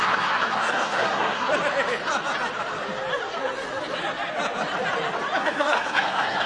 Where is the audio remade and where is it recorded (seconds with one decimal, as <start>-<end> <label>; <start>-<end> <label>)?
0.0-1.5 remade; 1.5-5.4 recorded; 5.4-6.5 remade

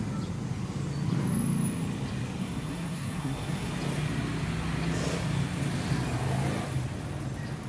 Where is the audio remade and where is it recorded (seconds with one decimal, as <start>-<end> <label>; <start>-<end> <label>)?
0.0-2.4 recorded; 2.4-3.7 remade; 3.7-7.7 recorded

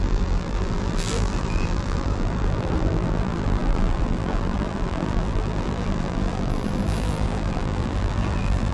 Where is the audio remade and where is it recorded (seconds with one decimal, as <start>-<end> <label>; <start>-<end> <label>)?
0.0-8.7 remade

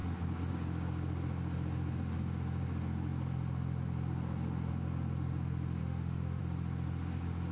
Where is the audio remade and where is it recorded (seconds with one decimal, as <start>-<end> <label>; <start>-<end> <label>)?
0.0-5.8 recorded; 5.8-6.4 remade; 6.4-7.5 recorded

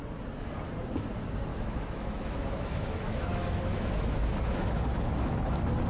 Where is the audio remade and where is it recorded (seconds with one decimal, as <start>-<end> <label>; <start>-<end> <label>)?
0.0-1.5 recorded; 1.5-4.8 remade; 4.8-5.9 recorded

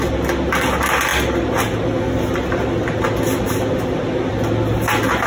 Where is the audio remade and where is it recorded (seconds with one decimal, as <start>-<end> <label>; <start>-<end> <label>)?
0.0-5.3 recorded

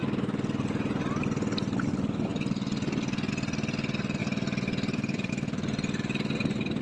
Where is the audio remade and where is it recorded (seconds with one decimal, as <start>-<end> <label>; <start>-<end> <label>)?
0.0-4.2 recorded; 4.2-5.3 remade; 5.3-6.8 recorded